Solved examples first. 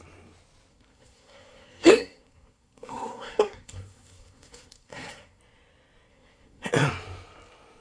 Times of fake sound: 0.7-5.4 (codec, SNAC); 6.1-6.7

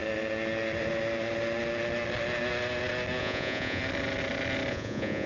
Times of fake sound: 3.2-3.8 (vocoder, Vocos); 4.7-5.3

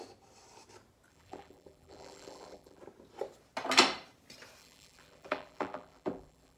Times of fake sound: 1.1-2.8 (vocoder, BigVGAN v2); 4.6-6.6